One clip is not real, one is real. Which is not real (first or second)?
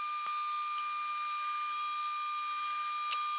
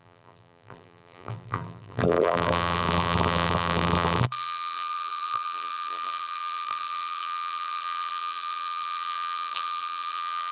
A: second